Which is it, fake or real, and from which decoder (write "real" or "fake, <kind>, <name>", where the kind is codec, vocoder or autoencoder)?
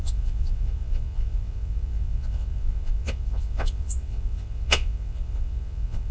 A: fake, vocoder, WaveNeXt